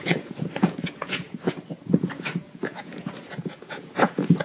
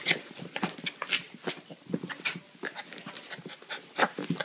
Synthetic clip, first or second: first